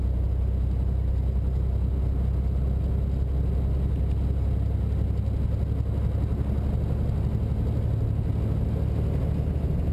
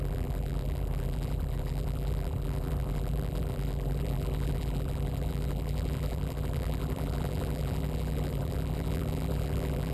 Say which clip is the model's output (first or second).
second